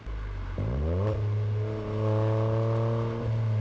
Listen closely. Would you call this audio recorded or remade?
recorded